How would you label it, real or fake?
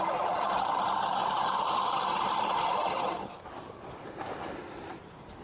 real